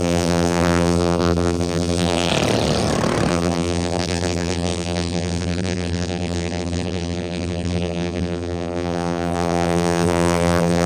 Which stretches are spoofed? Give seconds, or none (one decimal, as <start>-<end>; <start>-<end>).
0.0-2.3; 3.3-10.9